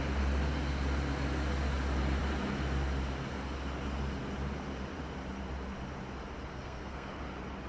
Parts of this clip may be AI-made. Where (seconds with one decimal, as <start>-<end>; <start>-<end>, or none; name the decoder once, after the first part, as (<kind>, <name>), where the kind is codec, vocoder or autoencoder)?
6.5-7.1 (codec, SNAC)

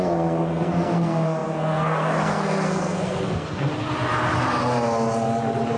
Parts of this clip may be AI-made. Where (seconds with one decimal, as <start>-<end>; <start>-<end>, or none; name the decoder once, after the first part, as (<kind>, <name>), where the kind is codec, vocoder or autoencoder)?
0.0-3.7 (codec, SNAC)